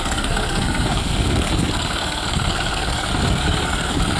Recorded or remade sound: remade